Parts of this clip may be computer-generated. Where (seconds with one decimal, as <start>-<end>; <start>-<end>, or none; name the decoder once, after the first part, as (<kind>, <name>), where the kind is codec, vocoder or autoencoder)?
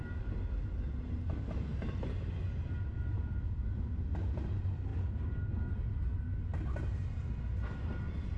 none